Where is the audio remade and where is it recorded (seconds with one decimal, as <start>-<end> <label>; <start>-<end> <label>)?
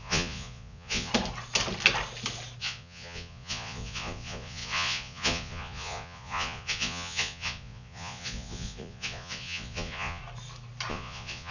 0.0-1.1 remade; 1.1-2.6 recorded; 2.6-10.2 remade; 10.2-10.9 recorded; 10.9-11.5 remade